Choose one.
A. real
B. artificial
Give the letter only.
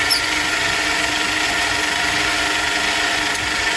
B